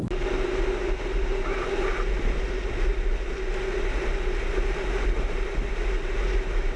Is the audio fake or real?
real